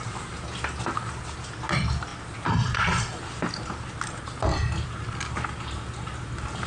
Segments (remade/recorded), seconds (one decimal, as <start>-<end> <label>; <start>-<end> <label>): 0.0-6.7 recorded